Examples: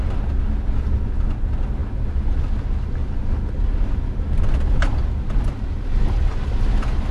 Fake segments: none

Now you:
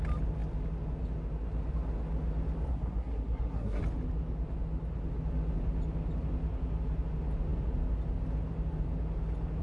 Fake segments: 2.7-3.8 (codec, SNAC)

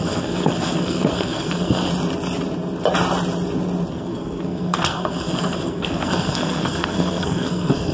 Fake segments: 0.0-1.9 (codec, SNAC); 3.9-7.9

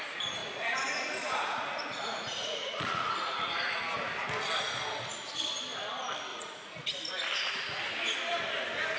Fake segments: 0.4-3.8 (vocoder, Vocos); 6.3-6.9